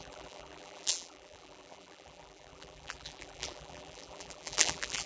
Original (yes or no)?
no